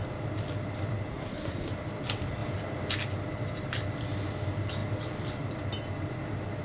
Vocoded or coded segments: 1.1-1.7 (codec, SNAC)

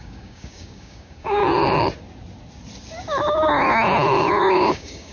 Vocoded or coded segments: 0.0-1.4 (codec, DAC); 4.5-5.1

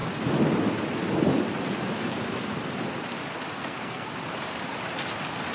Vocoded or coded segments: 3.6-4.1 (codec, SNAC)